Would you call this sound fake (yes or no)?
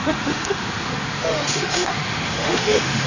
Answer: yes